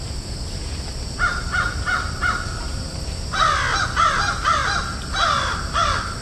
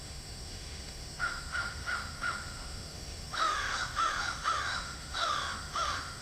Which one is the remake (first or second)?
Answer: second